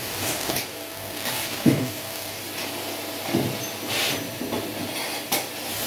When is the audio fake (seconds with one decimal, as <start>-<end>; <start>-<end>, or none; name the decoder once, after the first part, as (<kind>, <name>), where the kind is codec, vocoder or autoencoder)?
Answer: 0.0-2.4 (codec, DAC)